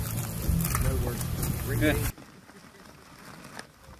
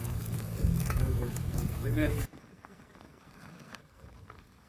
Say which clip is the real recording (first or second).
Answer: first